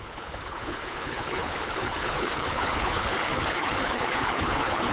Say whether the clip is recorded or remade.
remade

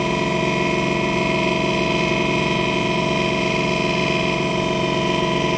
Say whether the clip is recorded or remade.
recorded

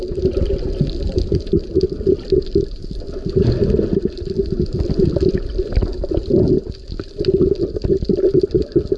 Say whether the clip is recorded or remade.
recorded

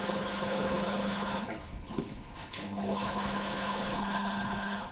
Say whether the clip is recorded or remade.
remade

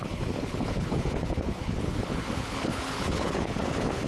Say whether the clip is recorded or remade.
remade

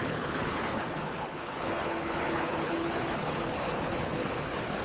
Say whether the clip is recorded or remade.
remade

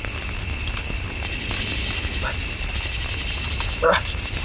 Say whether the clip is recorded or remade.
recorded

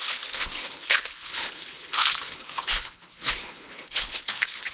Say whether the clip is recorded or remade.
remade